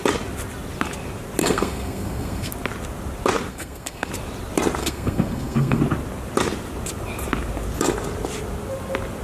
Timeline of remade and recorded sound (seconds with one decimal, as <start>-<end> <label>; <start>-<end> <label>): 0.0-1.4 recorded; 1.4-2.5 remade; 2.5-3.5 recorded; 3.5-4.1 remade; 4.1-4.8 recorded; 4.8-5.8 remade; 5.8-9.2 recorded